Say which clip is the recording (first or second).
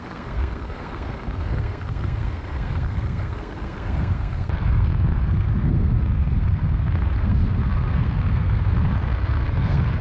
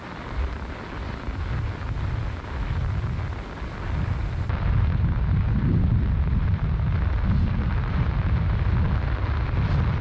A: second